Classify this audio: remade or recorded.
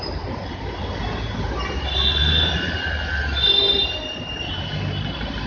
recorded